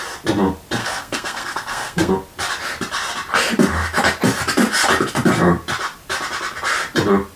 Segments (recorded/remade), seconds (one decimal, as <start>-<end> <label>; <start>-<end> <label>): 0.0-0.8 recorded; 0.8-2.1 remade; 2.1-7.4 recorded